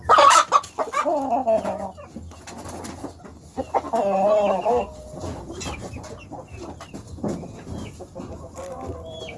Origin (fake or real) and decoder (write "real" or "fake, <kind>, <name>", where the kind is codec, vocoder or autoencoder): real